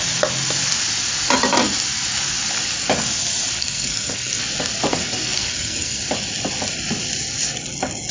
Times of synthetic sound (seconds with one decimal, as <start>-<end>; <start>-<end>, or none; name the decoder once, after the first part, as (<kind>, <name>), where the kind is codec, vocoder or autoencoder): 3.6-4.4 (codec, SNAC); 4.9-6.0